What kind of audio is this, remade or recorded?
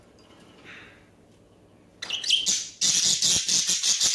recorded